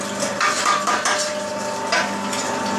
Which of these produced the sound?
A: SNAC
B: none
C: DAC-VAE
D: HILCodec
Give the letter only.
B